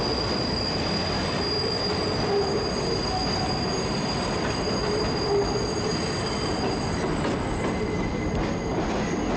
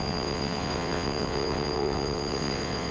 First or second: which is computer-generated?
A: second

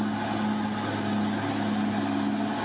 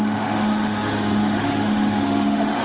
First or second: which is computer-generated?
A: second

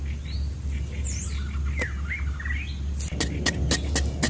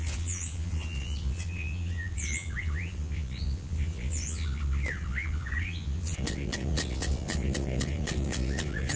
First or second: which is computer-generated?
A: second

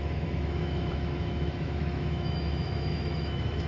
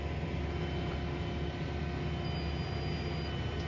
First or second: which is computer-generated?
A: first